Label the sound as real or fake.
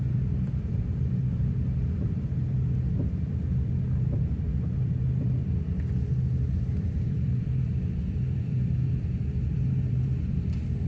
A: fake